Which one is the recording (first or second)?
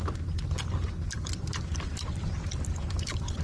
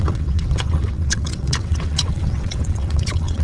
first